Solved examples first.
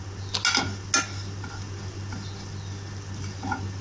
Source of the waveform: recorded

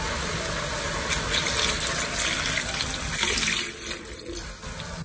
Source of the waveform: recorded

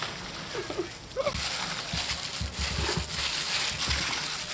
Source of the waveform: recorded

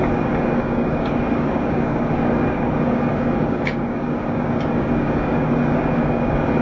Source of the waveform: remade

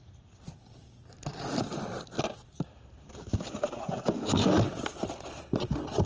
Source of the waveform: recorded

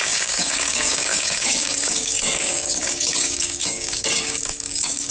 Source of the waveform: remade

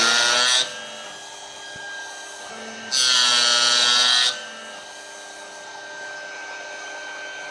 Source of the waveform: recorded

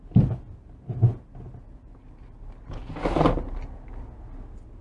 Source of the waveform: recorded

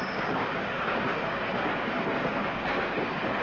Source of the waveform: remade